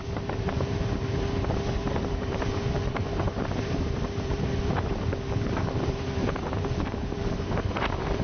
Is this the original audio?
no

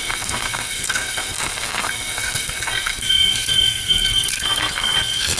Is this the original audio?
no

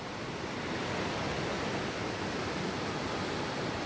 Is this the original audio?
yes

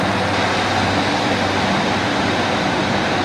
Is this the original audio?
yes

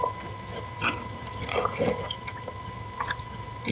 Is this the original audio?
no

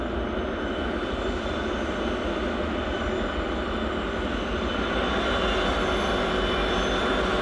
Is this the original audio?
yes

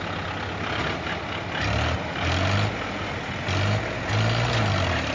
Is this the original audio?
yes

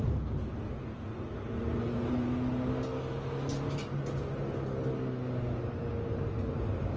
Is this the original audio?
yes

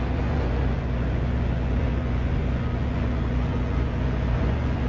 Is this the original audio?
no